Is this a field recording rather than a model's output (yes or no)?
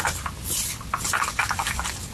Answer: yes